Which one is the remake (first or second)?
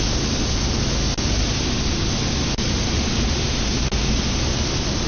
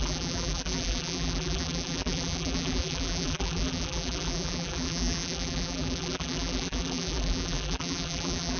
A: second